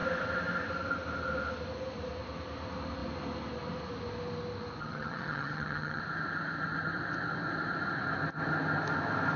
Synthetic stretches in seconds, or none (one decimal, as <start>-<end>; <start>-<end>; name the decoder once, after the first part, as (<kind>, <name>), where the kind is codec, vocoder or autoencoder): 4.8-6.0 (vocoder, HiFi-GAN)